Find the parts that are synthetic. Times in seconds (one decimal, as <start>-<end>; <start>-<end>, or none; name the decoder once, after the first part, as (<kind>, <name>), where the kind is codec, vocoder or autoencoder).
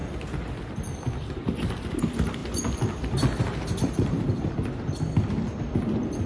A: none